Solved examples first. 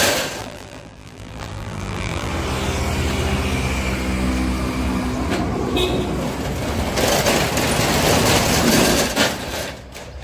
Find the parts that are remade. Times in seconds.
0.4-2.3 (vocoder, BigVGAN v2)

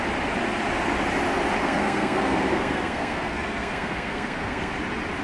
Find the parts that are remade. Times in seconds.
1.6-4.7 (codec, SNAC)

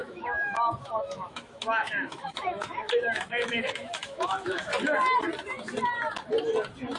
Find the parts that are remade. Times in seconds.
0.0-4.7 (autoencoder, DAC-VAE)

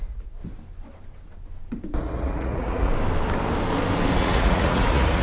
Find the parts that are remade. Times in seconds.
0.0-0.4 (vocoder, Vocos); 2.0-2.9; 4.2-5.2

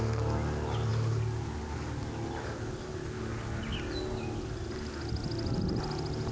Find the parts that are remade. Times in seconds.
none

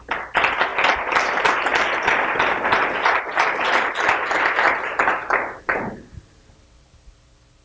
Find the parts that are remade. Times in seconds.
none